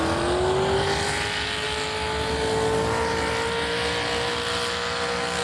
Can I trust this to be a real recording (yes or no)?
yes